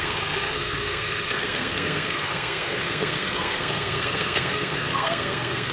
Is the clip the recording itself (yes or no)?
no